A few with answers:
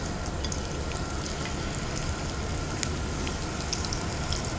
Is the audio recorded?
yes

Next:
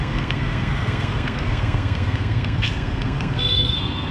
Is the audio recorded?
no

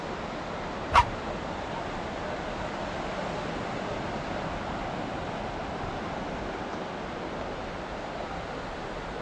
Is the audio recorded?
yes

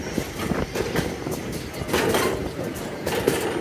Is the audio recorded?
no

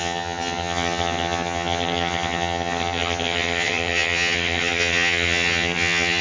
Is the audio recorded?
no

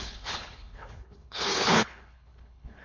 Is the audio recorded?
no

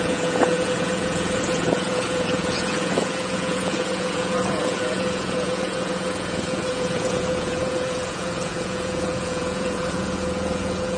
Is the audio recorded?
no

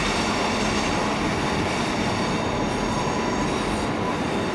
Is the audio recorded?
yes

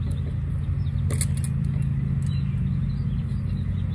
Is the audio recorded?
yes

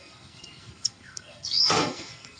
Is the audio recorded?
no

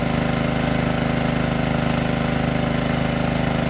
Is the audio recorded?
yes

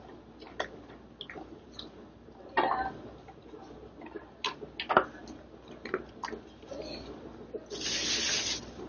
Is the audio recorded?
yes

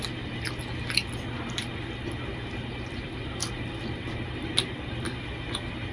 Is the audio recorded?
yes